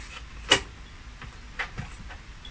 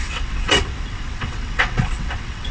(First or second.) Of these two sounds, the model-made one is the second